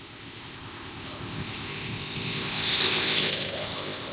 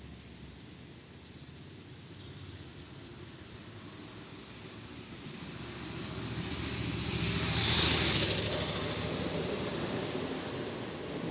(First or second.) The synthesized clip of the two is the first